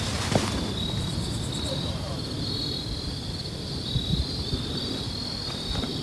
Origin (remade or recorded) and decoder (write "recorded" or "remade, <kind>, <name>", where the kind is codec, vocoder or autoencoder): recorded